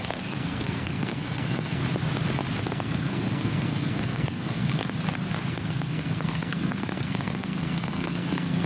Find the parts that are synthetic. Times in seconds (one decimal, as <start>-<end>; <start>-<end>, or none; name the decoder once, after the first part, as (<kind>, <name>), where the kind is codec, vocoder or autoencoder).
0.0-1.8 (codec, SNAC); 2.6-4.8; 5.5-8.7